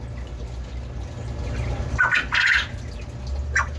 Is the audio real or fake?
real